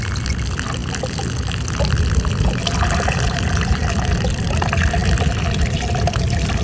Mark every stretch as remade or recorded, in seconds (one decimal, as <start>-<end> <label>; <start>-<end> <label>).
0.0-6.6 recorded